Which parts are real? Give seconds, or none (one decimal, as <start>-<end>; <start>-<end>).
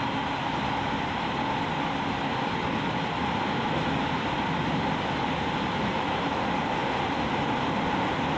0.0-8.4